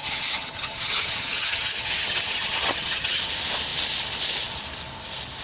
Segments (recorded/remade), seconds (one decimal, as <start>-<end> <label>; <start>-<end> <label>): 0.0-3.2 remade; 3.2-5.4 recorded